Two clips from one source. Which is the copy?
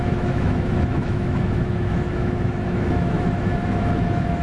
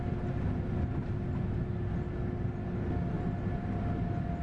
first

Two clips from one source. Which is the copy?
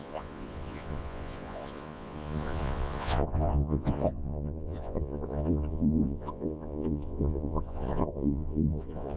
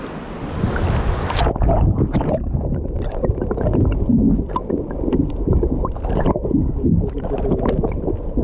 first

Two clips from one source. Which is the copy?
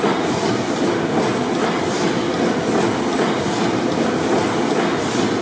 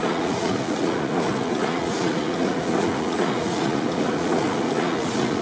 second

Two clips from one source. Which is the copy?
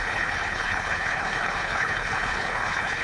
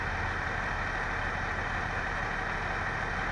first